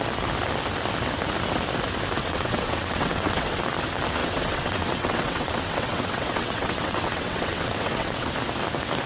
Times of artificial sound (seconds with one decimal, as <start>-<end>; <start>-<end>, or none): 2.2-3.6; 4.2-8.3